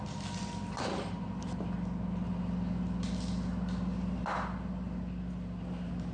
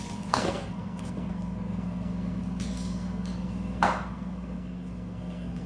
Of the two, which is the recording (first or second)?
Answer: first